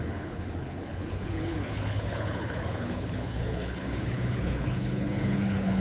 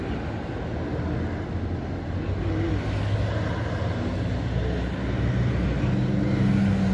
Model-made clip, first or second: first